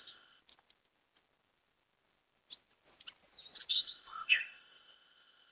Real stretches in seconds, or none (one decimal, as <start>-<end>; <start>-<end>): 0.4-3.7